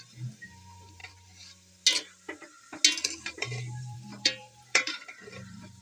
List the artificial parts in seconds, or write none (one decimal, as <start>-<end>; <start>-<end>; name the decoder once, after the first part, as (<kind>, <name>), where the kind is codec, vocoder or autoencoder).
0.0-1.0 (vocoder, BigVGAN v2); 3.3-5.8